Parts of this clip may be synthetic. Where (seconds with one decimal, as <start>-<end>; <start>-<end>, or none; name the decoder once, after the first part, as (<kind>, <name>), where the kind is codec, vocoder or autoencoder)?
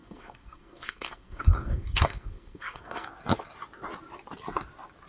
0.0-3.1 (codec, SNAC)